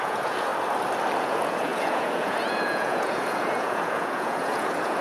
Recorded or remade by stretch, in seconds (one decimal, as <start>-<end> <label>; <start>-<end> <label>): 0.0-0.5 remade; 0.5-1.2 recorded; 1.2-5.0 remade